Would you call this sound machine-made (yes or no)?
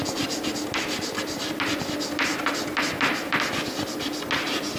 no